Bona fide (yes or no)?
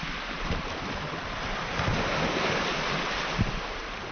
yes